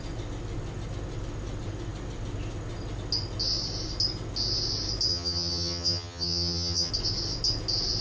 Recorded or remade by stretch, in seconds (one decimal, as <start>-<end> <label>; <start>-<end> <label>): 0.0-5.1 recorded; 5.1-6.9 remade; 6.9-8.0 recorded